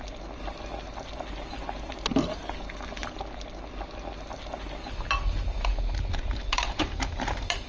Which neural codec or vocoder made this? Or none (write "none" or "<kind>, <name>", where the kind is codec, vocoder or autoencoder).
none